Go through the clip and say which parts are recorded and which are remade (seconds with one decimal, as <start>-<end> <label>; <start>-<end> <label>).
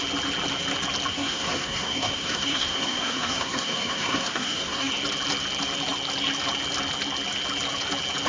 0.0-1.1 recorded; 1.1-4.9 remade; 4.9-8.3 recorded